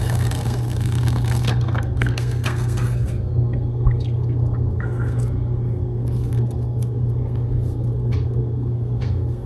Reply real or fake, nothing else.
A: fake